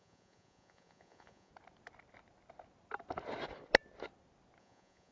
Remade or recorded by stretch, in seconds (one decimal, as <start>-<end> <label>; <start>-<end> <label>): 0.0-1.5 remade; 1.5-4.6 recorded; 4.6-5.1 remade